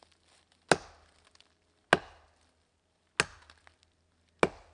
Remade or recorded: recorded